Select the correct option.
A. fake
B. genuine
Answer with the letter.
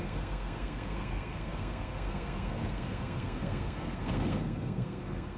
A